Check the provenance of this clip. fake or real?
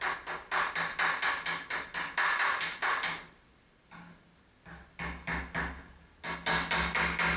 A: real